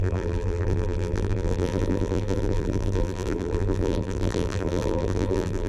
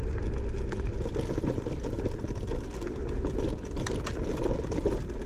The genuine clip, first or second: second